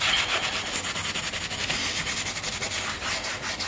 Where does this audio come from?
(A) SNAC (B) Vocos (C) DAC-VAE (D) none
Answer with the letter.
D